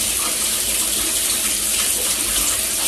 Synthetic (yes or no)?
no